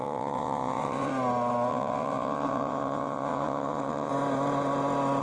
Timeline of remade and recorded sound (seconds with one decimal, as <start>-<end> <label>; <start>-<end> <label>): 0.0-1.1 remade; 1.1-1.7 recorded; 1.7-4.1 remade; 4.1-5.2 recorded